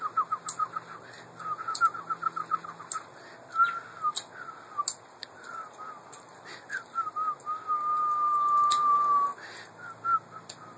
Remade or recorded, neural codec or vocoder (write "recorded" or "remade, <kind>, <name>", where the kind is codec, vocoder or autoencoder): recorded